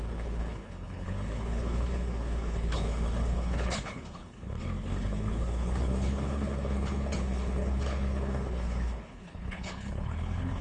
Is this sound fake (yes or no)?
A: yes